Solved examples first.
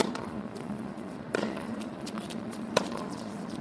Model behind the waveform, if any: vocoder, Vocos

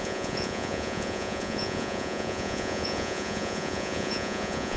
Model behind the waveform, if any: vocoder, Vocos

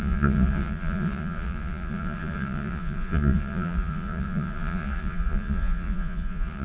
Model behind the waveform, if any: vocoder, Vocos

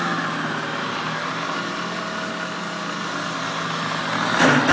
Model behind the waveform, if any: none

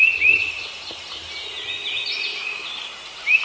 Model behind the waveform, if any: none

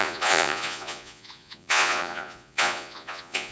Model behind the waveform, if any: vocoder, Vocos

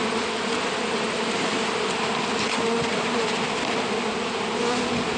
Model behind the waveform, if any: none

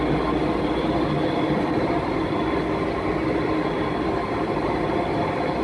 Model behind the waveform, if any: none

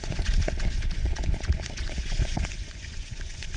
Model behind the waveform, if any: vocoder, Vocos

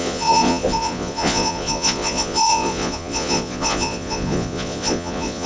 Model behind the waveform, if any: vocoder, Vocos